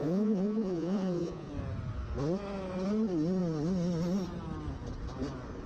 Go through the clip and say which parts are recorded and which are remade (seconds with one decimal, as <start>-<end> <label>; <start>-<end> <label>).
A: 0.0-1.5 remade; 1.5-5.7 recorded

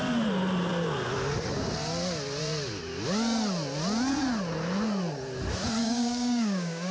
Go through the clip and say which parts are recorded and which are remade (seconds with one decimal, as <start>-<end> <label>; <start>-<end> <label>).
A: 0.0-5.8 recorded; 5.8-6.9 remade

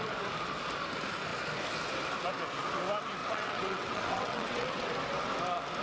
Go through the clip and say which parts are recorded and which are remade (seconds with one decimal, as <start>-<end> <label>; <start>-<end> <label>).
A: 0.0-3.2 recorded; 3.2-4.9 remade; 4.9-5.8 recorded

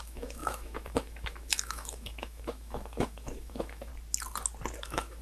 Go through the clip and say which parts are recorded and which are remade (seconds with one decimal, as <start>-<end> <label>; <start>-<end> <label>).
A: 0.0-3.9 remade; 3.9-4.8 recorded; 4.8-5.2 remade